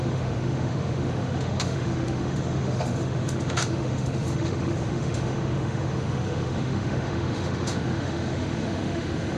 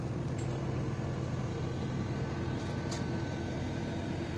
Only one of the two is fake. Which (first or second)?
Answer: first